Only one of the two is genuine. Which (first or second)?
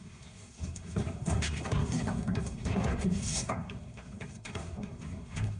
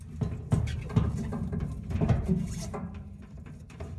second